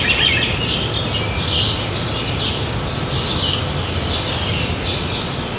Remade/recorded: recorded